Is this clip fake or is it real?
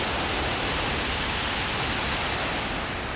real